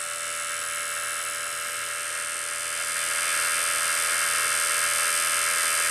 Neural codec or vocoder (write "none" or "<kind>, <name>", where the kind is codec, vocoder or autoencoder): none